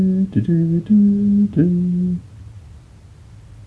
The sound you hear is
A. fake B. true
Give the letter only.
B